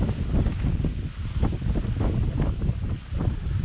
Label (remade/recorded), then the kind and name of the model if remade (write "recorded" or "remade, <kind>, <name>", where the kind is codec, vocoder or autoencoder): recorded